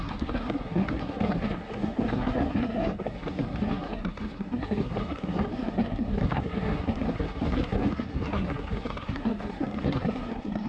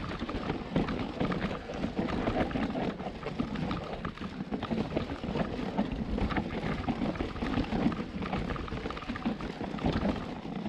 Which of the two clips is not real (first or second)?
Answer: first